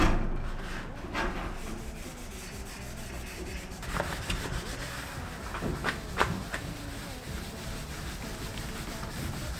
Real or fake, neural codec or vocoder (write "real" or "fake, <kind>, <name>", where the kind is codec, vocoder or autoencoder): real